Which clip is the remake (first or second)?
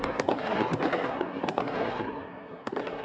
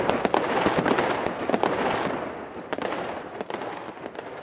first